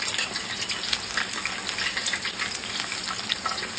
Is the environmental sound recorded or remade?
recorded